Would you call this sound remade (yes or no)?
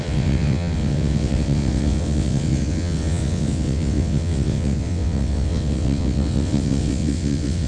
yes